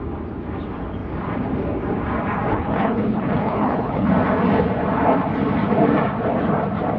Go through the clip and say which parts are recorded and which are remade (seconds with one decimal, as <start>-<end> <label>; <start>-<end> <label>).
0.0-2.5 recorded; 2.5-4.1 remade; 4.1-7.0 recorded